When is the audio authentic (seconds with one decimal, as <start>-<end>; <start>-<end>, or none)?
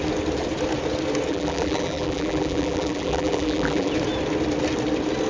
0.0-1.3; 3.9-5.3